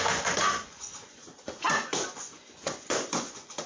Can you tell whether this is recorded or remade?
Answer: remade